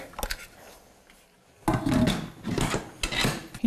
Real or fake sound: real